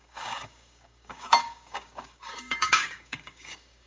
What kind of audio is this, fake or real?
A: fake